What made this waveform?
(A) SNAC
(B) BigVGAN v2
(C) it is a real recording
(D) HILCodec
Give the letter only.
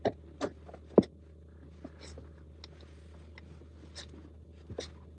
C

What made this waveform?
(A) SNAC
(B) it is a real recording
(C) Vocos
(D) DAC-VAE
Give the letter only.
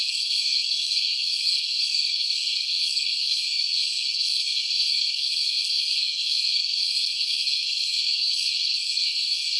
A